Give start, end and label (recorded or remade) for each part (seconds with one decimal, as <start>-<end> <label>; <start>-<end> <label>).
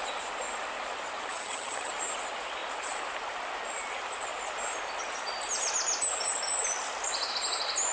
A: 0.0-1.3 recorded; 1.3-1.9 remade; 1.9-7.9 recorded